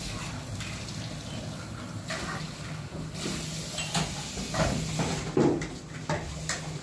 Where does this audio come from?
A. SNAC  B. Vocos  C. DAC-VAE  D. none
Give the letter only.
D